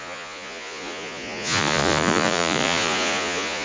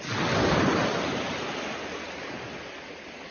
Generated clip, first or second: first